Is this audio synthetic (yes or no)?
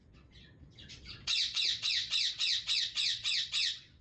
yes